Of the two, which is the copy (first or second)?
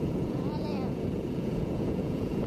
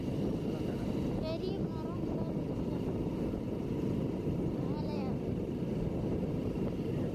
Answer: first